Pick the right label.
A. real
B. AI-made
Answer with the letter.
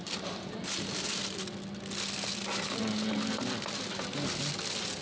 A